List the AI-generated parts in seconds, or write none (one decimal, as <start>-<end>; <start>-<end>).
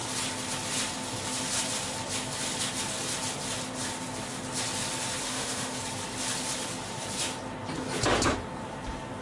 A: 5.2-5.8